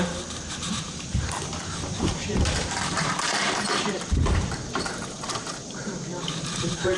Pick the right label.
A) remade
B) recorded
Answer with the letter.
A